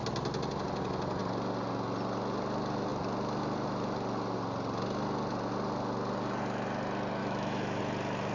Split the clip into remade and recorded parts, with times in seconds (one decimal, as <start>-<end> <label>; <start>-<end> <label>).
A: 0.0-7.2 recorded; 7.2-7.8 remade; 7.8-8.3 recorded